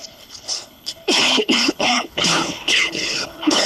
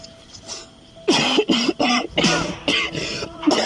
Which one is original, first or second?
second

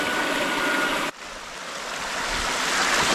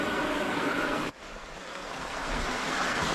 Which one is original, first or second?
first